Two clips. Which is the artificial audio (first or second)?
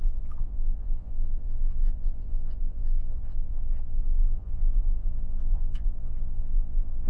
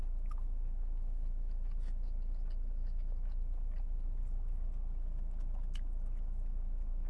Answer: first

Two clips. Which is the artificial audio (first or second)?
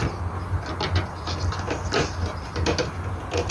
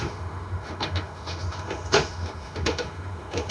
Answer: second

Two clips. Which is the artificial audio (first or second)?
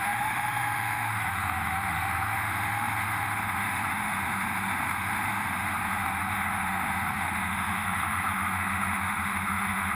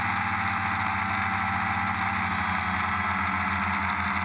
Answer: first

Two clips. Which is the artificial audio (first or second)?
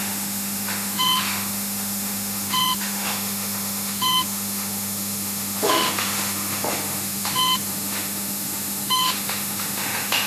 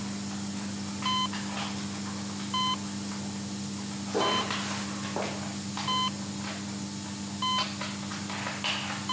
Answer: first